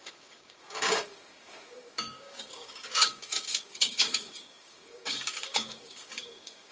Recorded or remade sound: remade